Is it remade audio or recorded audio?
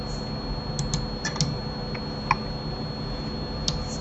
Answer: recorded